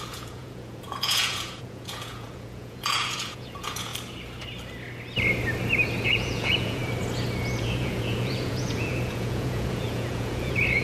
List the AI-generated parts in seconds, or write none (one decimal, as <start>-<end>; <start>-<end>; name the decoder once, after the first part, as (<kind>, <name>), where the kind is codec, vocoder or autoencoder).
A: 0.0-3.9 (vocoder, Vocos); 6.0-6.8; 7.6-10.8

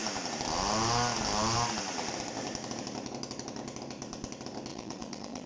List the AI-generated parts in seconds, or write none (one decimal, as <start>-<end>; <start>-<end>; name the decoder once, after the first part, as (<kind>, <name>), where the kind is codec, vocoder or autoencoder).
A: 4.7-5.5 (vocoder, Vocos)

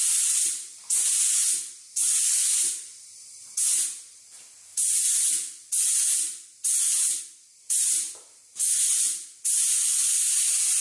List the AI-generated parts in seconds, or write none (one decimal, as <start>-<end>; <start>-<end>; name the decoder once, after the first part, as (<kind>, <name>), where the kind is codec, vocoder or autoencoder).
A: none